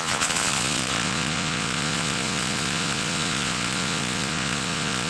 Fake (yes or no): yes